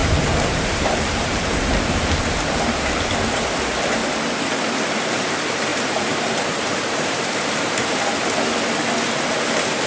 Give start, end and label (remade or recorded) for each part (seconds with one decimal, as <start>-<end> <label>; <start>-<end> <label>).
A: 0.0-1.6 remade; 1.6-5.7 recorded; 5.7-8.0 remade; 8.0-9.9 recorded